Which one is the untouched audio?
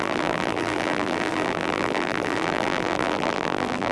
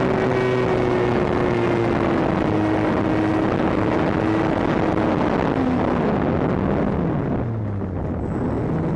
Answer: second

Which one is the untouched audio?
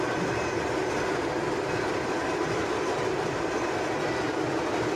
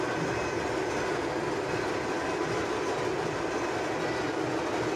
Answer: second